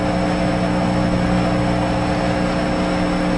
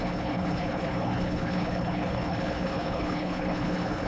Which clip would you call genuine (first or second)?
first